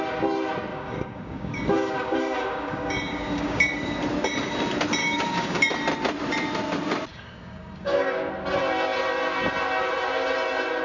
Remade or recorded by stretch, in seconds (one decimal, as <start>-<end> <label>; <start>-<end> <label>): 0.0-0.7 recorded; 0.7-3.9 remade; 3.9-5.0 recorded; 5.0-5.6 remade; 5.6-7.1 recorded; 7.1-8.3 remade; 8.3-10.8 recorded